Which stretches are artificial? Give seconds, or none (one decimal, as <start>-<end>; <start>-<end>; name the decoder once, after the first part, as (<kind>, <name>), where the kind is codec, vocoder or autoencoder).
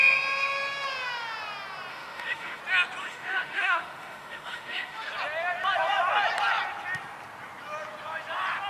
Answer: 1.9-2.6 (autoencoder, DAC-VAE); 3.0-5.1